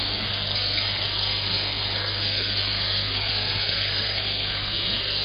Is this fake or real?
fake